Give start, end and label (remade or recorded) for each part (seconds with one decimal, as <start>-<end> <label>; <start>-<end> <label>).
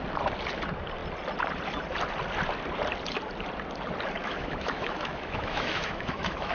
0.0-4.2 recorded; 4.2-6.5 remade